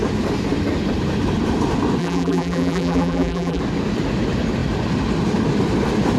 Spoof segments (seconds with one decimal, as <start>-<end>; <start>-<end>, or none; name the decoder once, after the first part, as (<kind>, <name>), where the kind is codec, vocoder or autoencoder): 2.0-3.6 (vocoder, BigVGAN v2)